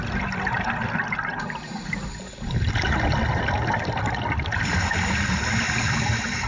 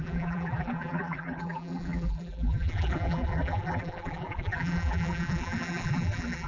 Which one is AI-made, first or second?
second